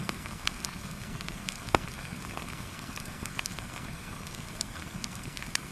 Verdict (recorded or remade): remade